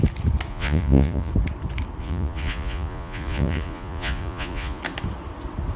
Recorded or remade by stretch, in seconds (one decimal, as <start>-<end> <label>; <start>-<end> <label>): 0.0-0.5 recorded; 0.5-1.3 remade; 1.3-2.0 recorded; 2.0-4.8 remade; 4.8-5.8 recorded